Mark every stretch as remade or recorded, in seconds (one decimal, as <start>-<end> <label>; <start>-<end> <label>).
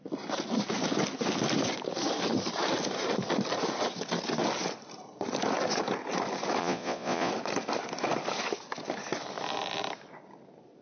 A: 0.0-6.6 recorded; 6.6-7.3 remade; 7.3-10.8 recorded